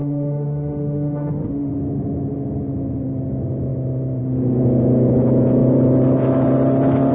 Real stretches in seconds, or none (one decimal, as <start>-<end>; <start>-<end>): 1.7-7.1